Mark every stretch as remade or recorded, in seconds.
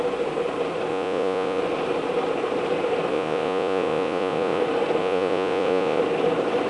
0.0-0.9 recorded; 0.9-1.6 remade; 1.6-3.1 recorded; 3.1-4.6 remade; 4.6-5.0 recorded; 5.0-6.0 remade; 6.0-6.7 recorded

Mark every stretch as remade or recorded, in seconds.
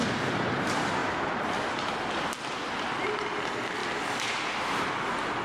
0.0-1.0 recorded; 1.0-1.9 remade; 1.9-5.4 recorded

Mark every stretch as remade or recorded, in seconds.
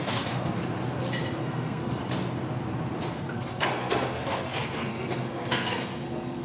0.0-0.6 remade; 0.6-1.4 recorded; 1.4-2.0 remade; 2.0-3.1 recorded; 3.1-6.4 remade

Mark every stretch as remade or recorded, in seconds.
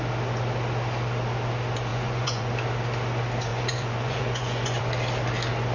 0.0-1.9 recorded; 1.9-2.5 remade; 2.5-3.5 recorded; 3.5-4.8 remade; 4.8-5.7 recorded